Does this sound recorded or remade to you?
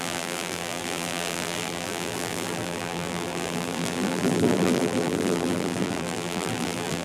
remade